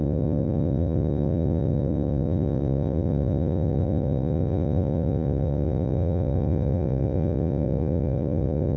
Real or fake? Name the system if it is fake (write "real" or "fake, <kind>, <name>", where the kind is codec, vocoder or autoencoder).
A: fake, vocoder, Vocos